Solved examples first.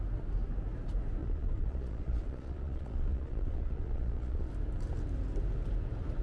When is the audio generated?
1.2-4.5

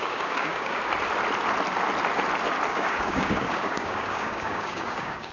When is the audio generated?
0.0-0.8; 2.7-5.3

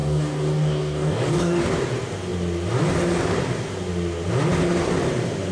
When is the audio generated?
0.0-1.6

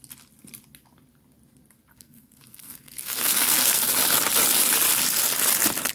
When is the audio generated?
1.9-3.9

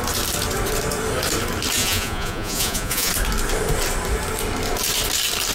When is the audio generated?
1.8-3.1

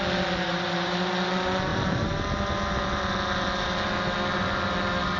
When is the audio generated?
0.5-1.1

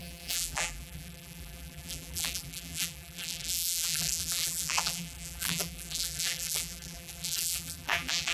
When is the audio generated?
0.0-8.3

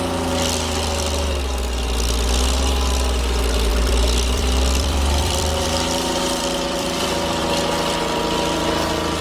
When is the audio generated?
3.7-7.4